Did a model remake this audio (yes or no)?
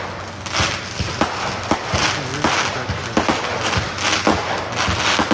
no